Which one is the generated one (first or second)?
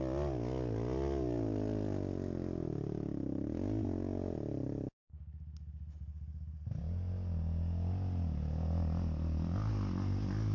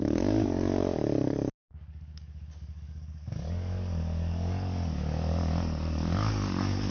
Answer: second